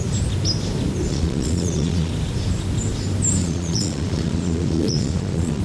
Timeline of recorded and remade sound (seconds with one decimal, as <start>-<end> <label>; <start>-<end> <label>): 0.0-1.1 recorded; 1.1-2.1 remade; 2.1-3.4 recorded; 3.4-5.6 remade